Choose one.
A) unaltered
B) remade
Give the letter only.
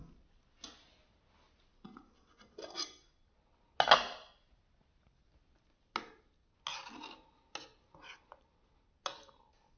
A